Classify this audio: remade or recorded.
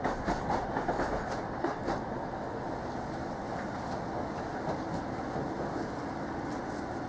recorded